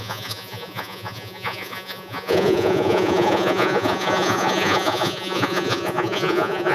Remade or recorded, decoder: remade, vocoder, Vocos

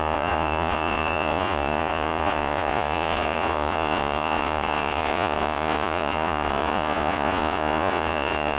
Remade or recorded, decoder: remade, vocoder, Vocos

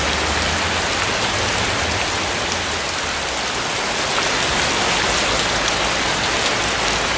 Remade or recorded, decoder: recorded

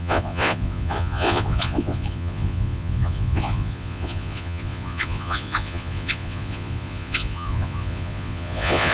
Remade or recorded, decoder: remade, vocoder, Vocos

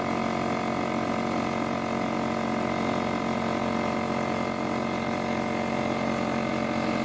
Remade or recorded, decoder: recorded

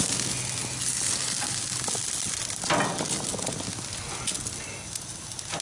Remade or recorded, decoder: recorded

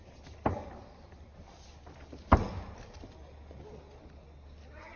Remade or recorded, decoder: recorded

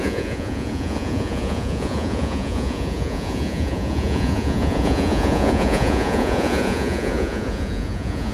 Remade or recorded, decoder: remade, vocoder, Vocos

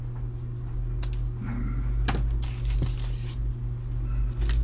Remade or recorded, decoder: recorded